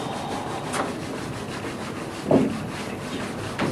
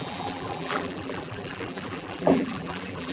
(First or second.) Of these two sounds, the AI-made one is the second